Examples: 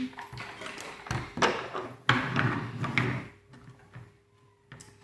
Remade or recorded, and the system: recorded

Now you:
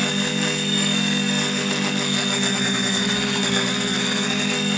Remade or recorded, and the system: remade, codec, SNAC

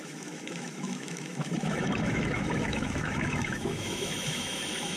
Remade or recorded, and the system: remade, autoencoder, DAC-VAE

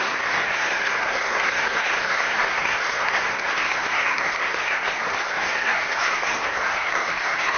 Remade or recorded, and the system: remade, codec, SNAC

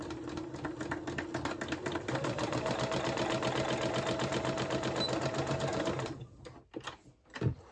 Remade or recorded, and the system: recorded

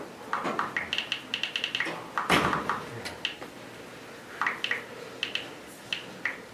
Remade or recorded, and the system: recorded